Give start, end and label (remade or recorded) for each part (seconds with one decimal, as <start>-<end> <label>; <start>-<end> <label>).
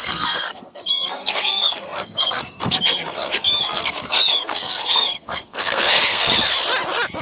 0.0-6.3 remade; 6.3-7.2 recorded